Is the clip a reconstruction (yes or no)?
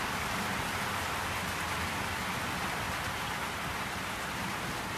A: no